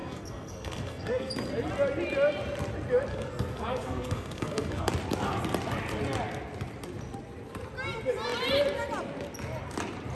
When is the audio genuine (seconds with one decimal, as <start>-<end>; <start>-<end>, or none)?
1.3-3.1; 4.9-10.2